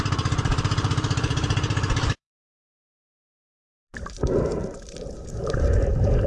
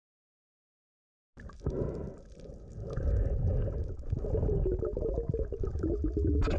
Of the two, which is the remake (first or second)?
first